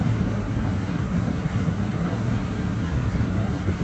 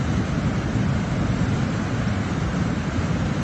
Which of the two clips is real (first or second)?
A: second